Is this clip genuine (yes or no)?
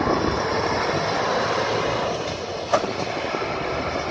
yes